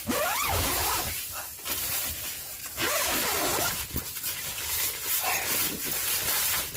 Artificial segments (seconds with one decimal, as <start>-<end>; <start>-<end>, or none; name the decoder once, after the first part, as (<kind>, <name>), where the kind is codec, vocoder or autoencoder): none